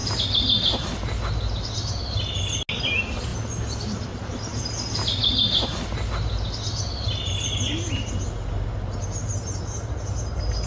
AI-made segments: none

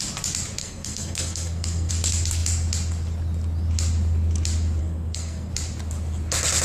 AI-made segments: 0.6-1.9 (codec, SNAC); 4.8-5.5

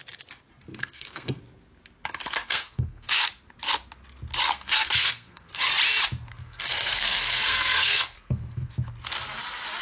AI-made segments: 0.7-1.4 (codec, SNAC); 2.2-3.3; 4.5-5.7; 6.3-8.7

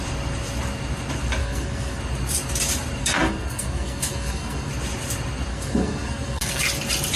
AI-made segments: 1.4-2.0 (codec, SNAC); 3.0-4.7; 5.5-6.6

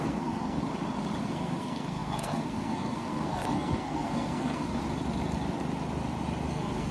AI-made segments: 0.0-0.6 (codec, SNAC); 1.2-4.8; 6.5-6.9

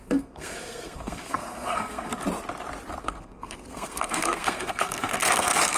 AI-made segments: 0.0-2.1 (codec, SNAC); 3.0-5.8